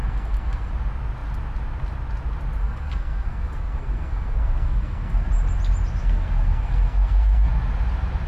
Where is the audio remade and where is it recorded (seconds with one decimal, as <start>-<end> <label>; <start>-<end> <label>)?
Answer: 0.0-0.7 remade; 0.7-2.6 recorded; 2.6-5.3 remade; 5.3-6.0 recorded; 6.0-7.5 remade; 7.5-8.3 recorded